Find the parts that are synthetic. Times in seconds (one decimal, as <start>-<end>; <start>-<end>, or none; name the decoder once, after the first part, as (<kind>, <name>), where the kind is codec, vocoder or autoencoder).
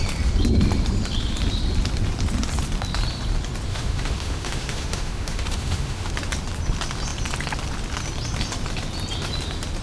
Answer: 3.7-6.1 (autoencoder, DAC-VAE)